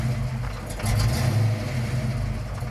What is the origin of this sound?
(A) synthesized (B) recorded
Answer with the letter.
B